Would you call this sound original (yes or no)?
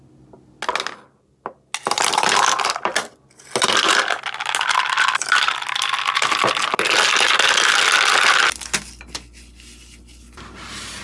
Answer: yes